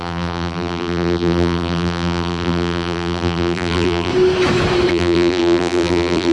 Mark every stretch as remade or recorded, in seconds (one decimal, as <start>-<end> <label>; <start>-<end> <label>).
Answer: 0.0-4.1 remade; 4.1-4.9 recorded; 4.9-6.3 remade